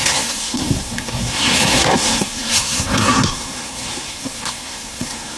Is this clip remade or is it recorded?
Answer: remade